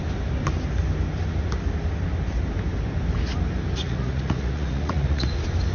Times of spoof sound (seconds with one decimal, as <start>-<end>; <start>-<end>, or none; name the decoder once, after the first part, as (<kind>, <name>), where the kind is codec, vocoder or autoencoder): 3.8-5.3 (vocoder, Vocos)